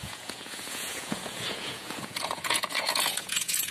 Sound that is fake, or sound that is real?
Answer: fake